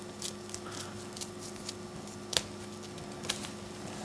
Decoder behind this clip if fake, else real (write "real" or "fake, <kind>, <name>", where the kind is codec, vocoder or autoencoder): real